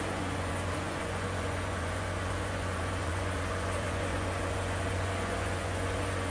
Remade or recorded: remade